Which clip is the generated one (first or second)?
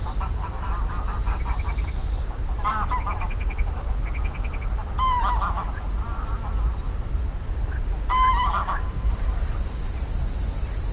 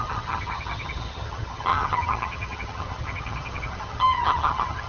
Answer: second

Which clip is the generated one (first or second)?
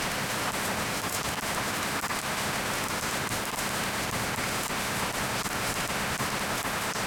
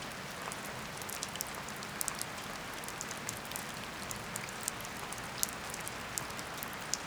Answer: first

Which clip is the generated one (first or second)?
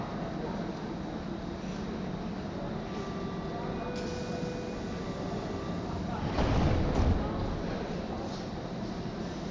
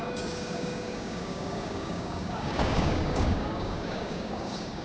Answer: second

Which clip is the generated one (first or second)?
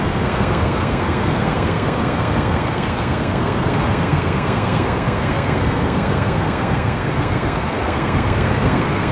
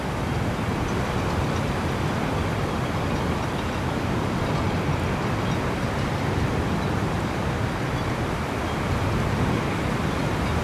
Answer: first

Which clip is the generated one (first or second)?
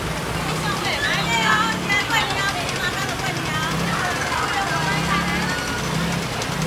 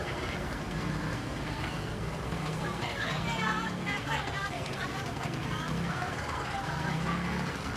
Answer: second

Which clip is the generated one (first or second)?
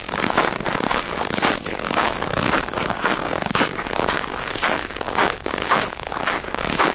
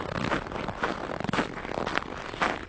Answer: first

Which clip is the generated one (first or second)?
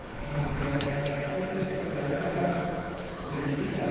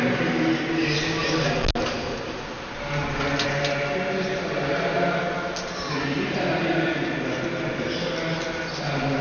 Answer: first